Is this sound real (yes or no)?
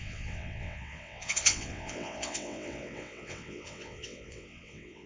no